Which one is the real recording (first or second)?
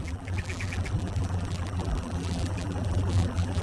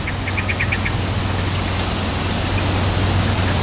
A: second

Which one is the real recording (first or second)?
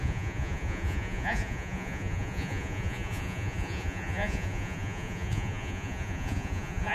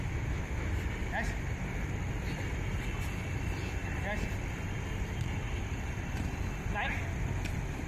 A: second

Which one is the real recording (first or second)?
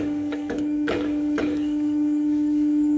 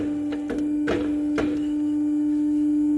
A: second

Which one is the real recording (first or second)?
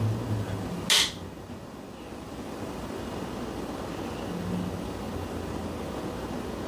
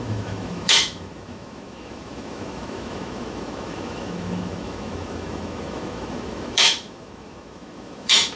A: first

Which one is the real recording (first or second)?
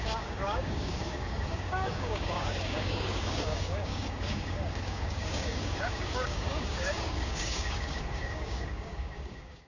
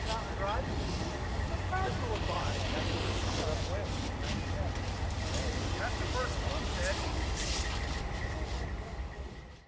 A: second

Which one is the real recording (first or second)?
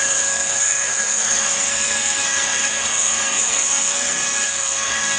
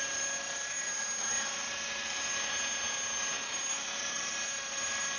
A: second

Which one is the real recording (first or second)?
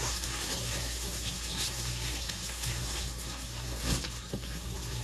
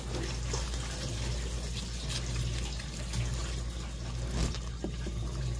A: second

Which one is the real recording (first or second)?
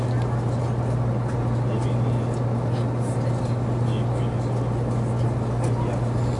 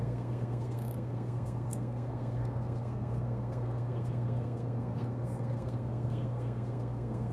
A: first